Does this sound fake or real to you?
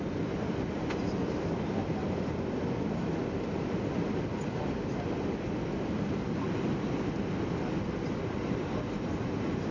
real